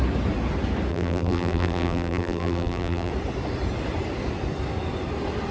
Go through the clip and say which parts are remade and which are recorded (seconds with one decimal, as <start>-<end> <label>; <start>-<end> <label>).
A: 0.0-0.9 recorded; 0.9-3.1 remade; 3.1-5.5 recorded